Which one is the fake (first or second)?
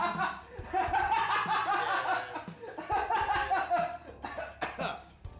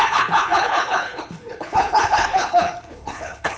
second